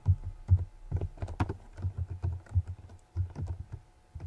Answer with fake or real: real